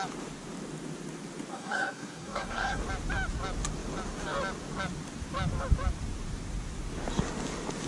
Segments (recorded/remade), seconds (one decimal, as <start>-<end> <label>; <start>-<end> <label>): 0.0-1.5 recorded; 1.5-2.8 remade; 2.8-7.9 recorded